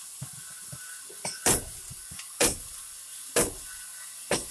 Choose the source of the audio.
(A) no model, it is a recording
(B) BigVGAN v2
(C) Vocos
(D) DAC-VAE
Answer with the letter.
A